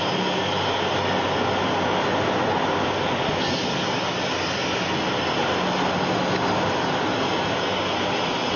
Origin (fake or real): real